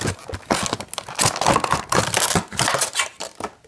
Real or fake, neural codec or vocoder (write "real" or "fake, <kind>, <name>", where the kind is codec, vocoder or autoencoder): real